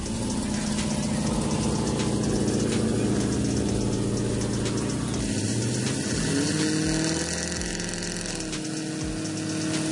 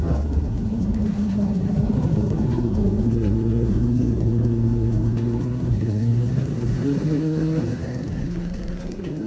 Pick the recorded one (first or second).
first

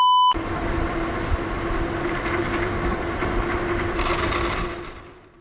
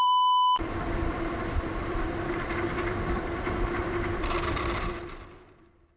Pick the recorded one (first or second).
first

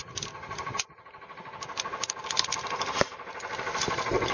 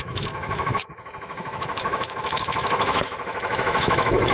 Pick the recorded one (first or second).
first